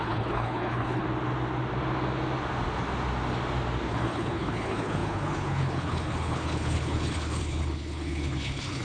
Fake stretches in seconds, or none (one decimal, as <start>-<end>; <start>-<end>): 0.0-1.0; 3.9-8.8